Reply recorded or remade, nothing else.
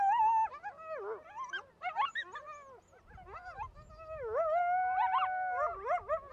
recorded